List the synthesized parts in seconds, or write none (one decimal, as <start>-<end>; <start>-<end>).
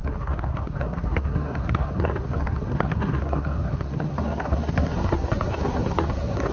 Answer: 0.0-6.5